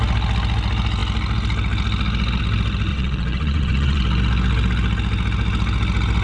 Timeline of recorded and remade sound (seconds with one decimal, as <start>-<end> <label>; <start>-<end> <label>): 0.0-2.9 recorded; 2.9-4.0 remade; 4.0-6.2 recorded